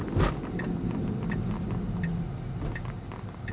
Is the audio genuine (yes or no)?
yes